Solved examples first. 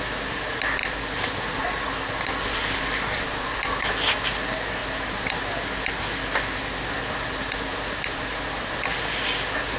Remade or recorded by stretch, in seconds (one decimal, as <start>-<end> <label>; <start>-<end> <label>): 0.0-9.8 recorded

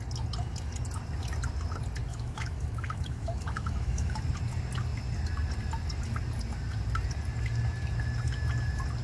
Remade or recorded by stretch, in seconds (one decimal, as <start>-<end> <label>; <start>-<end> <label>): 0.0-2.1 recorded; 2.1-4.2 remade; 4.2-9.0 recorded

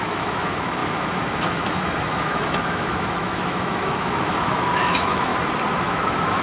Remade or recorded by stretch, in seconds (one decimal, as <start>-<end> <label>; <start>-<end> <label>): 0.0-5.3 remade; 5.3-5.8 recorded; 5.8-6.4 remade

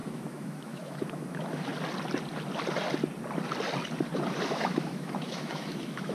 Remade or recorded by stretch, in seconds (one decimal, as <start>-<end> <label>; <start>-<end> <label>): 0.0-1.7 remade; 1.7-4.5 recorded; 4.5-6.1 remade

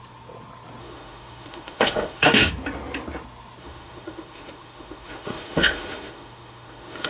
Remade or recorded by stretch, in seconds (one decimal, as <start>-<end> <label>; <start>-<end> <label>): 0.0-0.8 recorded; 0.8-2.5 remade; 2.5-3.6 recorded; 3.6-7.1 remade